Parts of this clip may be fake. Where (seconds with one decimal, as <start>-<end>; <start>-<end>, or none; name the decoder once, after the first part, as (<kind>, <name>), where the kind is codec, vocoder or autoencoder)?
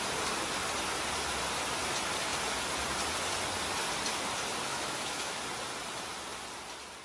4.7-5.4 (autoencoder, DAC-VAE)